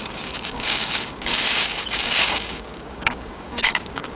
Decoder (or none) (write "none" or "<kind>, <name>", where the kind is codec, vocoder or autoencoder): codec, DAC